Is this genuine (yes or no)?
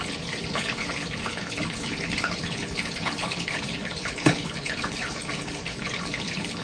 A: no